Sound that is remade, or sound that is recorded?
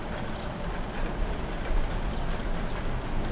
recorded